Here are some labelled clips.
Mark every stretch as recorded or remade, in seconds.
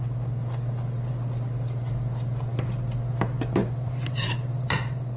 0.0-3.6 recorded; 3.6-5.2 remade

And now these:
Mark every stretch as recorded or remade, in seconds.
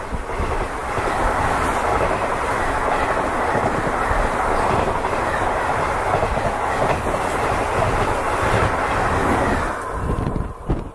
0.0-0.8 recorded; 0.8-1.8 remade; 1.8-10.9 recorded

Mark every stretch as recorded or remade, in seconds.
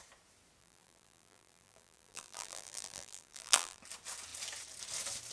0.0-0.6 recorded; 0.6-3.8 remade; 3.8-5.3 recorded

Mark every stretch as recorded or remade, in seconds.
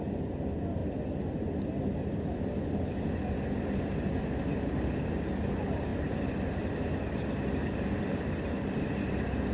0.0-9.5 recorded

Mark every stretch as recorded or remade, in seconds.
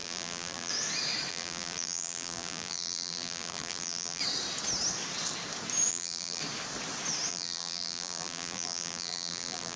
0.0-0.7 remade; 0.7-1.3 recorded; 1.3-4.2 remade; 4.2-5.9 recorded; 5.9-6.4 remade; 6.4-7.3 recorded; 7.3-9.8 remade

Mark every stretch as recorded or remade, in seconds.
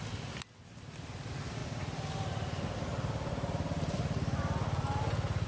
0.0-1.6 remade; 1.6-2.7 recorded; 2.7-5.5 remade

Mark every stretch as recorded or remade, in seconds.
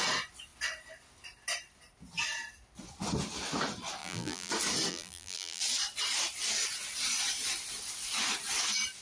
0.0-4.0 recorded; 4.0-4.5 remade; 4.5-4.9 recorded; 4.9-5.6 remade; 5.6-9.0 recorded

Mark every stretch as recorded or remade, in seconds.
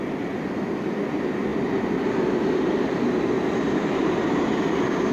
0.0-5.1 recorded